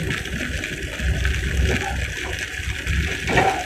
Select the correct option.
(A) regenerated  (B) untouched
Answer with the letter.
B